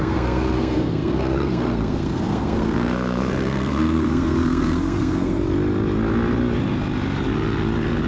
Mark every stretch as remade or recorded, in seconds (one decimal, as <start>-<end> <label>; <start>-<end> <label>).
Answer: 0.0-5.4 remade; 5.4-8.1 recorded